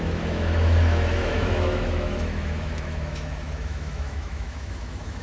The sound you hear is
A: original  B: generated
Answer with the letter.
B